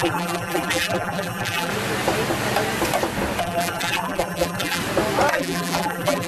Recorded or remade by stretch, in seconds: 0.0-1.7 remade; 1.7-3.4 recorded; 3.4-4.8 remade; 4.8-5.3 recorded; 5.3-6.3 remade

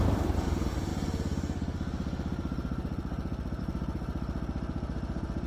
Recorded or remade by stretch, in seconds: 0.0-5.5 recorded

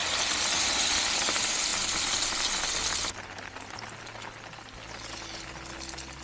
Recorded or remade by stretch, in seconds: 0.0-6.2 recorded

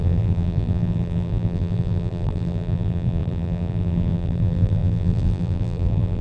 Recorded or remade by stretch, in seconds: 0.0-6.2 remade

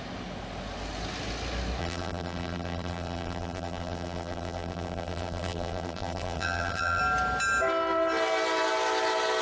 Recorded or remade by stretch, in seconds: 0.0-1.8 recorded; 1.8-7.0 remade; 7.0-9.4 recorded

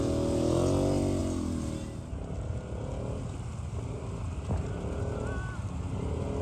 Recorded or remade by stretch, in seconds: 0.0-6.4 recorded

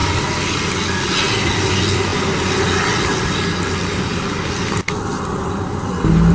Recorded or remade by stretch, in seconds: 0.0-6.3 recorded